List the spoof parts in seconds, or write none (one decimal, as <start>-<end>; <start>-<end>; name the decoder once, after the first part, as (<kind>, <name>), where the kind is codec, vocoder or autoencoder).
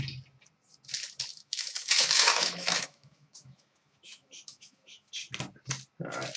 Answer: 1.3-5.1 (autoencoder, DAC-VAE)